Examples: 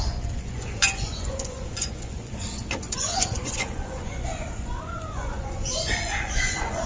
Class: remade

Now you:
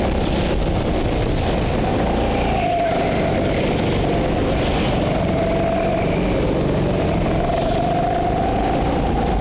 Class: recorded